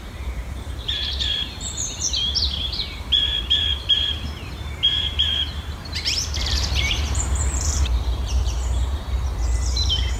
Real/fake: fake